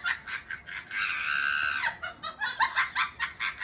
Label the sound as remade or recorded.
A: recorded